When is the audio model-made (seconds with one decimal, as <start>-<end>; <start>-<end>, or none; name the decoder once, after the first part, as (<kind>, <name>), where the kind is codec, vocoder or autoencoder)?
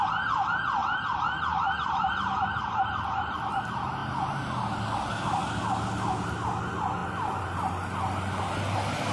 none